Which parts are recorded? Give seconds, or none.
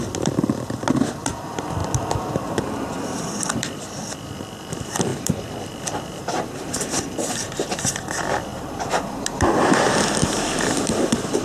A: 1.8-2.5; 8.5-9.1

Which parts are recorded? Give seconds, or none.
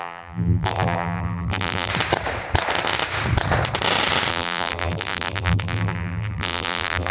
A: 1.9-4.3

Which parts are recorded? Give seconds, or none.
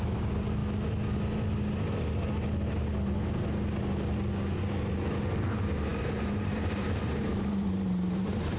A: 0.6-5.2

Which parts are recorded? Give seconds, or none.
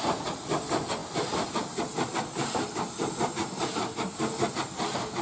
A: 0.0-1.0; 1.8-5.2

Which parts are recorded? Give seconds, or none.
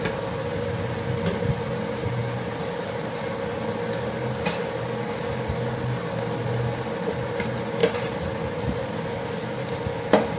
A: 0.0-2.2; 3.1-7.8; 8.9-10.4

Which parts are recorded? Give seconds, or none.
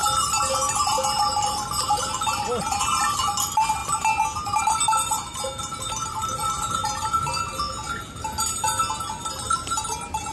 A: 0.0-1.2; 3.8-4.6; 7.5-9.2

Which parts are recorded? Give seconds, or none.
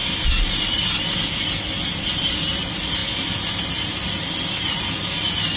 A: 3.0-5.6